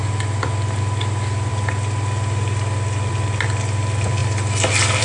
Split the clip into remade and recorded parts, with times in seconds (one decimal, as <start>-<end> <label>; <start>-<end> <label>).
0.0-5.0 recorded